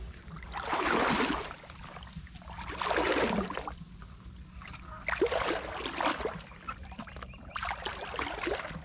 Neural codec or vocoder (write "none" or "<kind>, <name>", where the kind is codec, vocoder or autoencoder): none